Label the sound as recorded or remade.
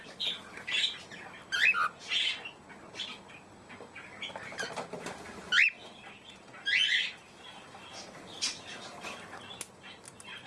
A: recorded